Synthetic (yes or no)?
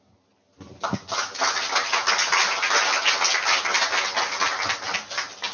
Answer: no